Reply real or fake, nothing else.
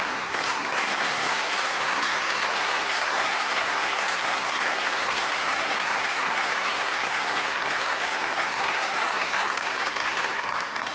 fake